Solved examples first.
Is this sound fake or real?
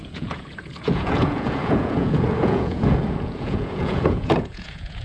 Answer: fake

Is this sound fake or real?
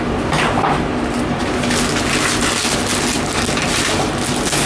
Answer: real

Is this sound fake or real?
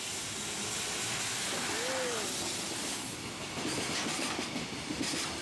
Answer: real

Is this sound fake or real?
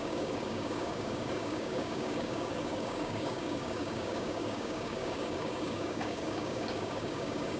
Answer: fake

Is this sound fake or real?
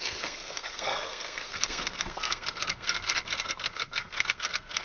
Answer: fake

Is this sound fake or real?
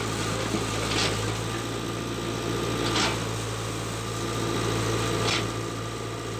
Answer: real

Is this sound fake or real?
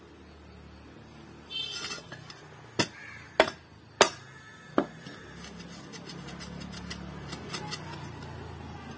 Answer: real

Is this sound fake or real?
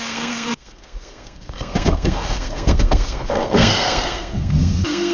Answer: fake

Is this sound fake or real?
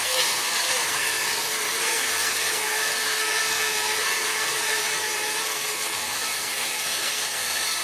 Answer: fake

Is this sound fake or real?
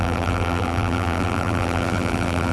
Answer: fake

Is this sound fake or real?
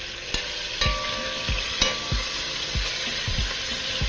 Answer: real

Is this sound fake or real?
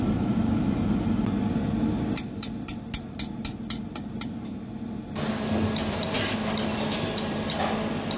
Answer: real